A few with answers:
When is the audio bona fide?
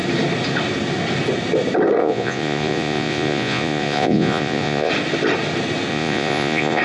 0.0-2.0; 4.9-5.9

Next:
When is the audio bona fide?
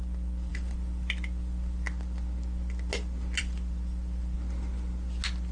0.0-5.5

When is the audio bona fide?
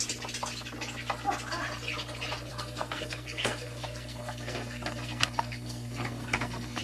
0.0-2.5